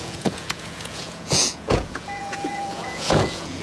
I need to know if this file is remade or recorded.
remade